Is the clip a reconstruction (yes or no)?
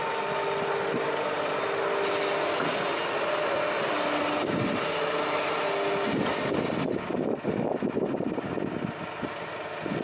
no